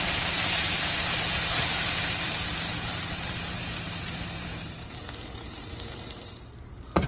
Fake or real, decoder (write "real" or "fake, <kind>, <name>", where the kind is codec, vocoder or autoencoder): fake, vocoder, BigVGAN v2